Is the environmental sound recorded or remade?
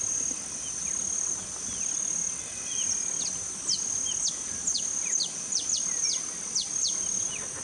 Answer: recorded